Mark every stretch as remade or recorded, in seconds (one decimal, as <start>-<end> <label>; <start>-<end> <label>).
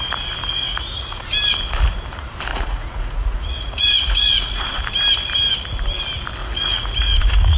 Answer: 0.0-0.7 recorded; 0.7-1.3 remade; 1.3-2.5 recorded; 2.5-4.8 remade; 4.8-6.4 recorded; 6.4-7.6 remade